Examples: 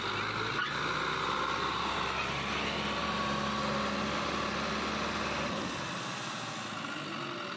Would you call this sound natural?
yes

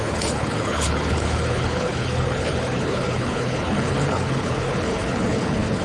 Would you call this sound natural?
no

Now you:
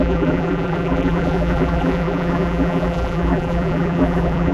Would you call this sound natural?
no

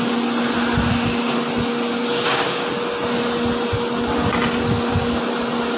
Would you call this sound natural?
yes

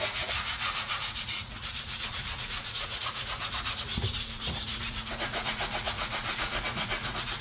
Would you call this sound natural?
no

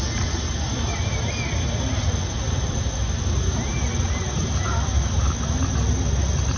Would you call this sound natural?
yes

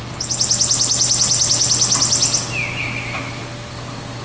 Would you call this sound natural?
yes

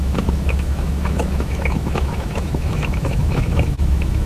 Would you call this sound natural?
no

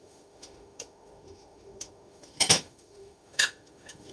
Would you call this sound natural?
no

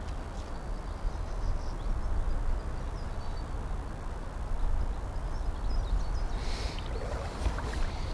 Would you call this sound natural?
yes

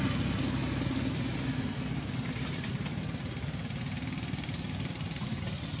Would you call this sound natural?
yes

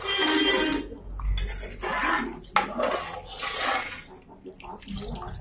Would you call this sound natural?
yes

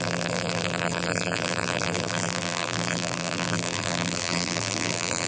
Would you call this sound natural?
no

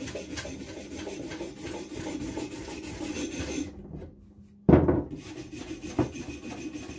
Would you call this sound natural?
yes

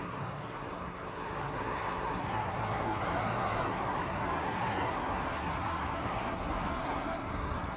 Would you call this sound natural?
no